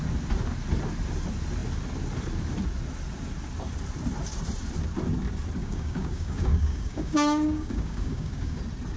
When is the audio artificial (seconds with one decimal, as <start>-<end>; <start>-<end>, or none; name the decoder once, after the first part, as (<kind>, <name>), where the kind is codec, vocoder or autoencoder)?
5.6-8.6 (codec, DAC)

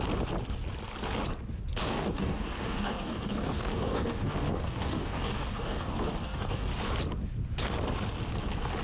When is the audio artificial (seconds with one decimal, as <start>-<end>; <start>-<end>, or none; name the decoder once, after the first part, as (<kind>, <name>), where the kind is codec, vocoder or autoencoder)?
1.8-6.7 (codec, DAC)

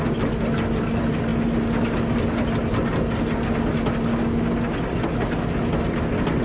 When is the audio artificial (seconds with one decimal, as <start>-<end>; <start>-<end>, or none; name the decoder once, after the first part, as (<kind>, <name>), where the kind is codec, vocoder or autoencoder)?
none

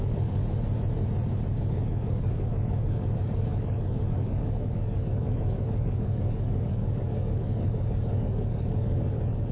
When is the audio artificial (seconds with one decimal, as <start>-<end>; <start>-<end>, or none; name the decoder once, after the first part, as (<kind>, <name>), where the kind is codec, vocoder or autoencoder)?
0.0-0.4 (codec, DAC); 1.7-9.5